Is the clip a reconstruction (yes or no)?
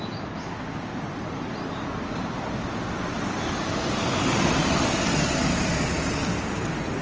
no